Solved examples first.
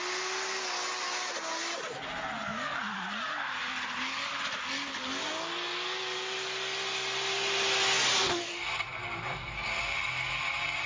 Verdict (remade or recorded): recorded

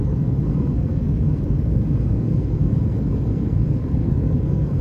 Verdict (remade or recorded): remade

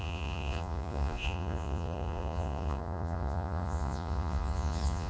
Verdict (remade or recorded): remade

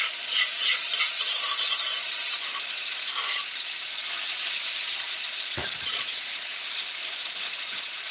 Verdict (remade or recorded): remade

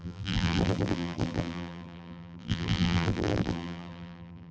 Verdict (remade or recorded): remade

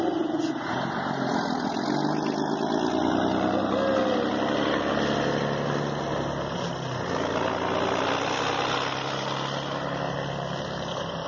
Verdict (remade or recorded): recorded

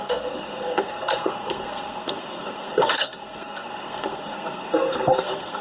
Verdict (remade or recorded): remade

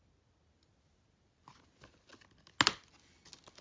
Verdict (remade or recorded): recorded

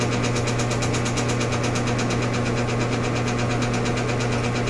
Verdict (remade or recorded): recorded